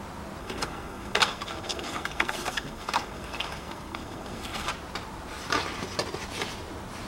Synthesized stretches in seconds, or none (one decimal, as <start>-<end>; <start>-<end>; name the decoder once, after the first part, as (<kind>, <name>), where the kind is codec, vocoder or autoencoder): 0.4-4.7 (codec, SNAC)